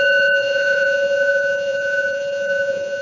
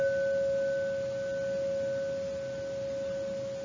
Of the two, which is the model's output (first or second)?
first